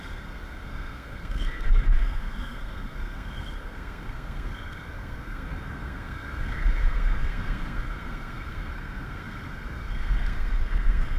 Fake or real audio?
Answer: fake